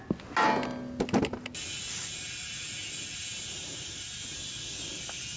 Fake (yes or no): no